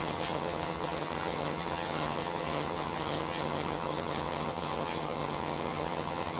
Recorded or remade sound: remade